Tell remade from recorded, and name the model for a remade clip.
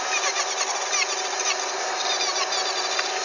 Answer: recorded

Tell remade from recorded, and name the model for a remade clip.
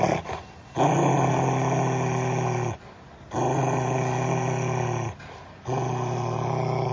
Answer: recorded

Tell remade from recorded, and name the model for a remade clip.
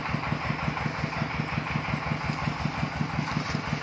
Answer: recorded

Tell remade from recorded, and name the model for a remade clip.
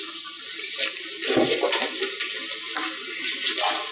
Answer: recorded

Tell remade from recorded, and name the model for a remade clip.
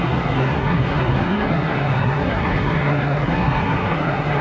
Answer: remade, codec, SNAC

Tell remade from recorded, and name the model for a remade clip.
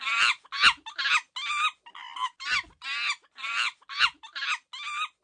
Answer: recorded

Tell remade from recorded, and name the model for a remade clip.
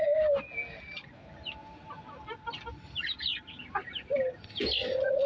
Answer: recorded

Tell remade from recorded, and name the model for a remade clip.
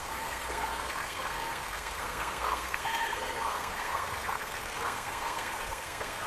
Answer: remade, codec, SNAC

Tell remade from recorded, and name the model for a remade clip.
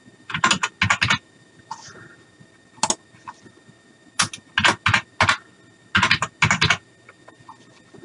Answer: recorded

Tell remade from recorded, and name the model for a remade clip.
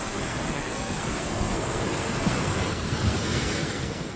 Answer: remade, codec, SNAC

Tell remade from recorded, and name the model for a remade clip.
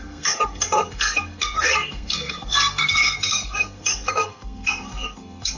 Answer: remade, codec, SNAC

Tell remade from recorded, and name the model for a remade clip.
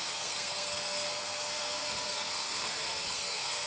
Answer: remade, codec, SNAC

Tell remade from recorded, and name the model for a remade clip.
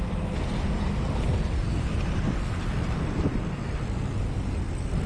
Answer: recorded